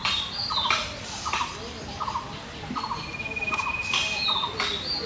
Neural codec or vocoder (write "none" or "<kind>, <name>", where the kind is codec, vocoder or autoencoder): none